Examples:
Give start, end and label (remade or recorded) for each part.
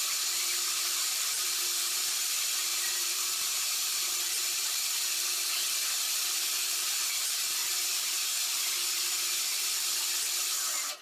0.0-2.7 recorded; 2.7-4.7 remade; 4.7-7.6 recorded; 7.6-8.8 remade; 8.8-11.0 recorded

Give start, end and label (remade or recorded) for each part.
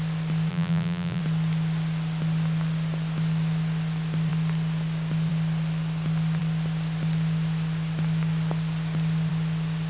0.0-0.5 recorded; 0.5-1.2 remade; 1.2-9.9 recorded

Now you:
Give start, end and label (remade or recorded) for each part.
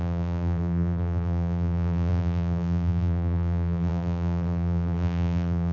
0.0-5.7 remade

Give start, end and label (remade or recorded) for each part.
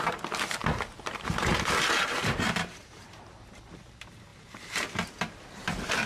0.0-0.6 recorded; 0.6-3.8 remade; 3.8-4.3 recorded; 4.3-6.1 remade